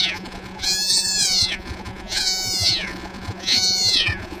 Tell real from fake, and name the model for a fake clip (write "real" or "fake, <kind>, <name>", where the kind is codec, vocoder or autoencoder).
fake, vocoder, Vocos